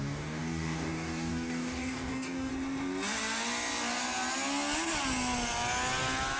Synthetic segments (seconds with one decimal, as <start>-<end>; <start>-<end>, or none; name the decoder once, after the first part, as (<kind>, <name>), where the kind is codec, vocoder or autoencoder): 0.0-2.5 (codec, DAC)